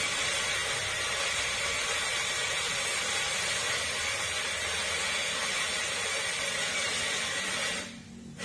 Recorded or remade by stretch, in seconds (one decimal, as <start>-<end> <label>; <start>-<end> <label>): 0.0-8.4 recorded